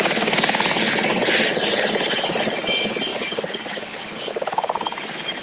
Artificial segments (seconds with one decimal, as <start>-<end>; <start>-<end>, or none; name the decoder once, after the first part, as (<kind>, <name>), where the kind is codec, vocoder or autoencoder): 3.1-4.3 (codec, DAC)